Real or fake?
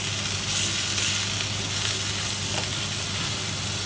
real